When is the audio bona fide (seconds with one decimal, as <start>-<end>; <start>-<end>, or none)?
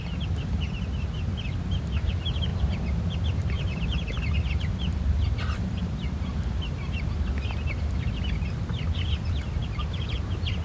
0.0-2.5; 7.0-9.6; 10.2-10.6